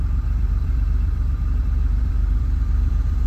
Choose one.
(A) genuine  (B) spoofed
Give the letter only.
B